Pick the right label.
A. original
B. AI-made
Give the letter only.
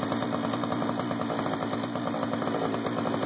A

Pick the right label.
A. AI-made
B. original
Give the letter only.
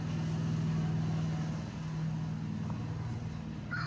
B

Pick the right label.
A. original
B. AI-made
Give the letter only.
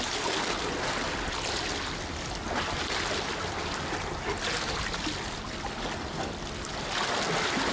A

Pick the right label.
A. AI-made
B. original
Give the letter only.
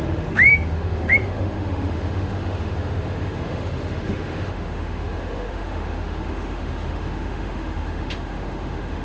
A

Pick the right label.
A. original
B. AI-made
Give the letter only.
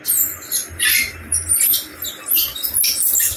A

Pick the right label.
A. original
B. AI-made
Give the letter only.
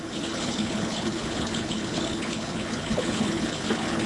B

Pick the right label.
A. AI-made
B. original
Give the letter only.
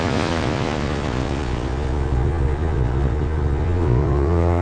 A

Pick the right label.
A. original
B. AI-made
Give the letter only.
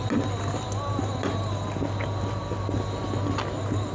A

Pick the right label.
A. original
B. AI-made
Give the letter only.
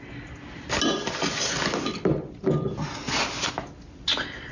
A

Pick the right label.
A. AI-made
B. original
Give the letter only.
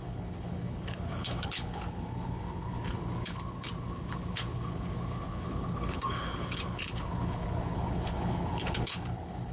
A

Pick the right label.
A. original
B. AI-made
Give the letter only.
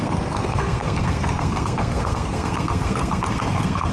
B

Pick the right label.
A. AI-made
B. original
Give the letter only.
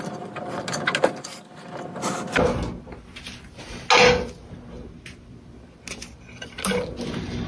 B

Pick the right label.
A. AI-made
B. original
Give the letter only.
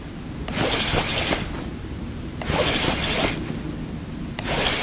B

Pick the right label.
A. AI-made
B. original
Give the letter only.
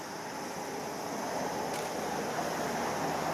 B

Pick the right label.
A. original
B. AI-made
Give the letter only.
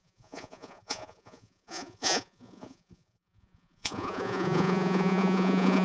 B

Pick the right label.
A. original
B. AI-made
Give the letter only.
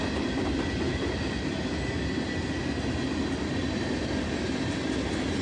A